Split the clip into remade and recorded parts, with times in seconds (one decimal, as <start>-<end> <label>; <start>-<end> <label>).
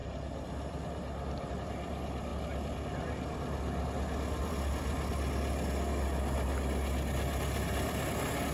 0.0-8.5 recorded